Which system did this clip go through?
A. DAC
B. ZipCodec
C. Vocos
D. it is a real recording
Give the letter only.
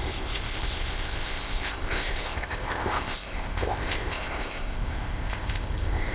B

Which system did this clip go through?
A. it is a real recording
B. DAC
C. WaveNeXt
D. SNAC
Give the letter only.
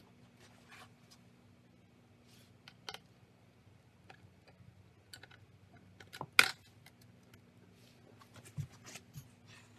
A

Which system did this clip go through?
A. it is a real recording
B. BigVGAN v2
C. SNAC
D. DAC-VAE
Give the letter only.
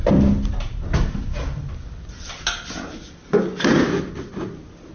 A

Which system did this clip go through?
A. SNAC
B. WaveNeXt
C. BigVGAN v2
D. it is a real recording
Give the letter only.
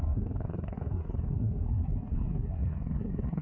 A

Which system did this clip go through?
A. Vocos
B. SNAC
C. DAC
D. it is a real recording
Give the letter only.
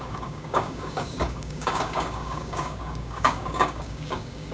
C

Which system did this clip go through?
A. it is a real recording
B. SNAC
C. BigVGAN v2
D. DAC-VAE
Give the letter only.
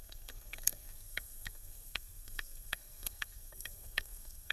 B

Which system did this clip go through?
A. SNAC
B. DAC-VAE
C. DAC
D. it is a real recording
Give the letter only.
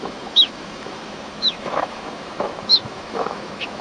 B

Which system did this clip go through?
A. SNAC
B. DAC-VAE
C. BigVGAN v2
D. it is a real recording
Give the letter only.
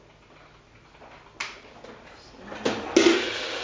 D